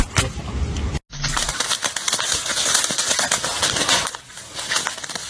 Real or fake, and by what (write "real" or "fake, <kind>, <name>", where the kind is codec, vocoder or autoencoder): real